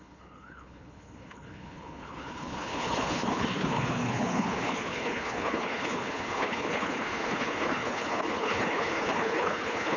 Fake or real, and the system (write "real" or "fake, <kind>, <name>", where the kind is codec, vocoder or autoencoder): fake, codec, HILCodec